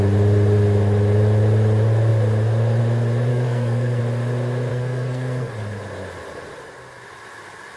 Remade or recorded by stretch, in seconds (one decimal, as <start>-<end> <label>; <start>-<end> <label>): 0.0-3.3 recorded; 3.3-4.0 remade; 4.0-4.7 recorded; 4.7-5.5 remade; 5.5-7.8 recorded